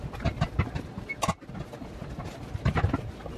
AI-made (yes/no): no